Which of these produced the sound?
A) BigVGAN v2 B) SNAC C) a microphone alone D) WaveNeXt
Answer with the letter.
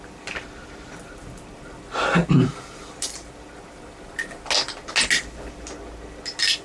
C